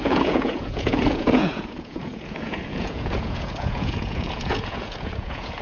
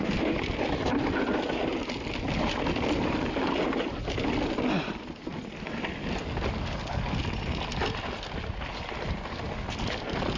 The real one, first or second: second